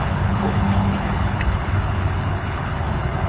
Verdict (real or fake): fake